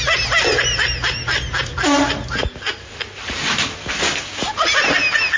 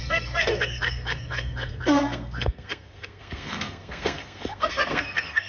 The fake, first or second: second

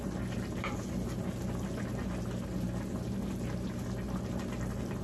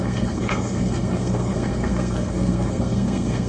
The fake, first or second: second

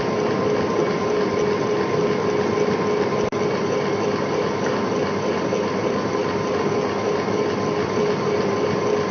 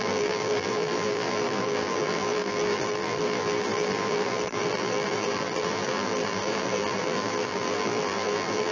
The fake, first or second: second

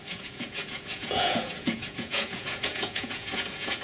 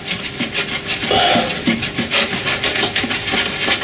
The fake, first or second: first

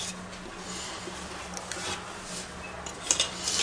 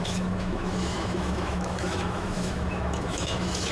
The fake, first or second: second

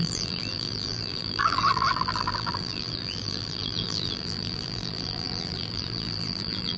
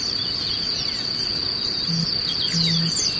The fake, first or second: first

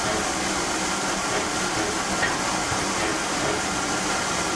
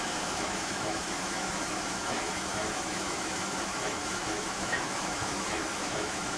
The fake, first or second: second